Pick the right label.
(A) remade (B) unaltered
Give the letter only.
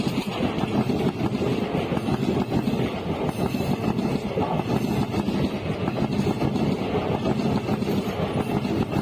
B